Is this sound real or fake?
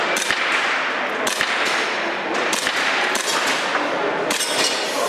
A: real